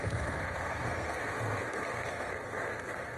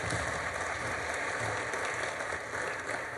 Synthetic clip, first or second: first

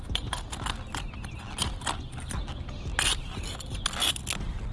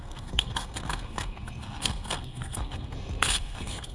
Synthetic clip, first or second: second